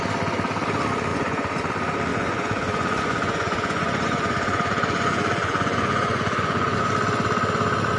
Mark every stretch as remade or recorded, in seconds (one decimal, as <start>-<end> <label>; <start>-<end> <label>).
0.0-1.1 recorded; 1.1-1.6 remade; 1.6-2.1 recorded; 2.1-6.9 remade; 6.9-8.0 recorded